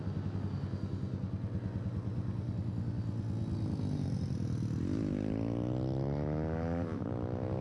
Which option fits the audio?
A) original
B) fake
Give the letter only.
A